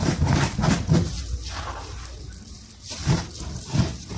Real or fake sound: real